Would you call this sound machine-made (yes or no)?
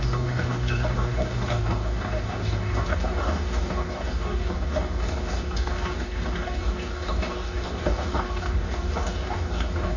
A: yes